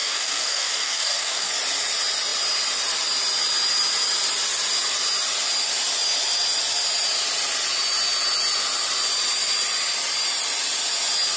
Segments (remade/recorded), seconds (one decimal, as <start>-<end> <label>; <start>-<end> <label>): 0.0-1.5 remade; 1.5-11.4 recorded